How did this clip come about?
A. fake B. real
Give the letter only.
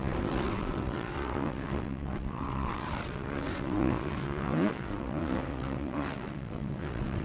A